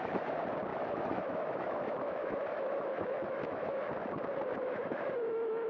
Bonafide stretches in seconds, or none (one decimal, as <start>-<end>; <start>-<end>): 0.0-0.7; 3.9-4.5